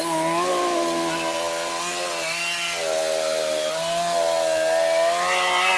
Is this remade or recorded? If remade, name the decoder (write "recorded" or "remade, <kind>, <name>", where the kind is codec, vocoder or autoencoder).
recorded